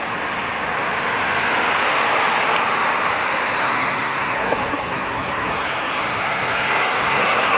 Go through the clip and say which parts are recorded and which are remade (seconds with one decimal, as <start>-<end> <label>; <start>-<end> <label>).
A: 0.0-3.6 recorded; 3.6-7.6 remade